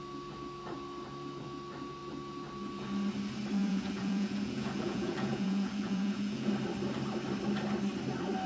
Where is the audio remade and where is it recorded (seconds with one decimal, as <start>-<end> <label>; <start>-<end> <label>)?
0.0-3.6 recorded; 3.6-6.5 remade; 6.5-8.5 recorded